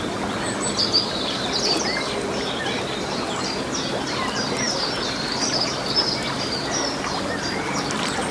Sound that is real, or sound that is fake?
real